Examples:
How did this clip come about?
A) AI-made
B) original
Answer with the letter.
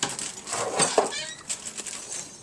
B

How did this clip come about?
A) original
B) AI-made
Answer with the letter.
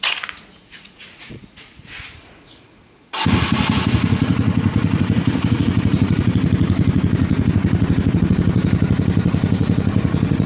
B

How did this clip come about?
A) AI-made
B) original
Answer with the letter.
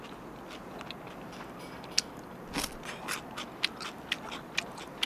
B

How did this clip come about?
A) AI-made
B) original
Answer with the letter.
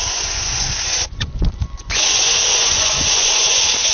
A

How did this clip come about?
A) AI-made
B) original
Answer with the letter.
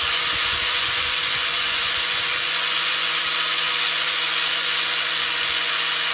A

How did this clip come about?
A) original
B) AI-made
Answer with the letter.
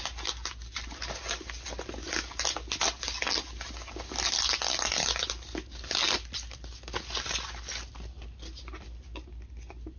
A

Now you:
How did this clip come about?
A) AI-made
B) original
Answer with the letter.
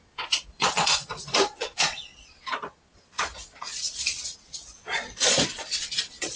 A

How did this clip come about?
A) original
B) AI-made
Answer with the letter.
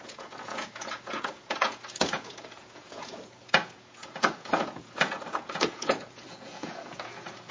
B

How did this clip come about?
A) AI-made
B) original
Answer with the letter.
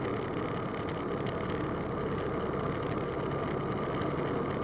B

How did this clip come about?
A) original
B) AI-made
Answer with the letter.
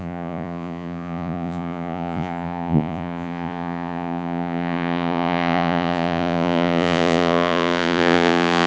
B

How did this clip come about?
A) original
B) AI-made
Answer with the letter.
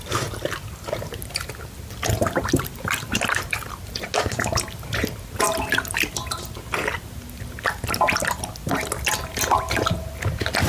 A